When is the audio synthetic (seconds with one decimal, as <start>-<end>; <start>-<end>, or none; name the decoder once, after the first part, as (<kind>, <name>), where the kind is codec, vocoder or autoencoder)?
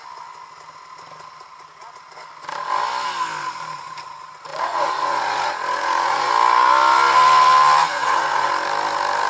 4.5-6.3 (vocoder, Vocos); 7.8-8.5